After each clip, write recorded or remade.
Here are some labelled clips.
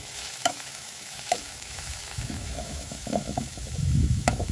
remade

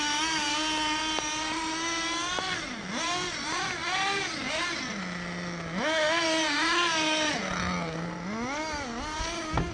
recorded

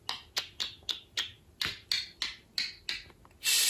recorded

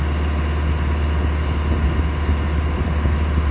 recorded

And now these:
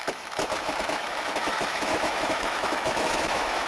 remade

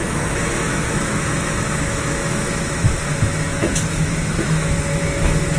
remade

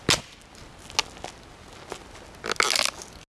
recorded